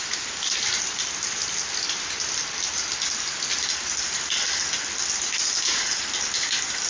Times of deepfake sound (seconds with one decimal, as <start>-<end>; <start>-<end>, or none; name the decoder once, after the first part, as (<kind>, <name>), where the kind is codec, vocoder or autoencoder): none